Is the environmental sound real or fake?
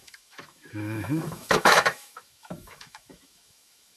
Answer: fake